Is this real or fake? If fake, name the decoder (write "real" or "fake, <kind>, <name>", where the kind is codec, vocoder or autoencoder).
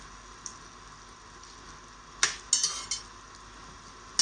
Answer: real